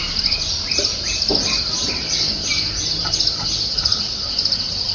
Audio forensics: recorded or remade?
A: recorded